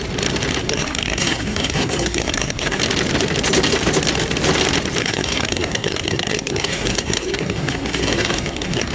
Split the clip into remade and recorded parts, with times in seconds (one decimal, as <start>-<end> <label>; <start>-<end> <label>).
0.0-0.6 recorded; 0.6-2.8 remade; 2.8-5.0 recorded; 5.0-8.9 remade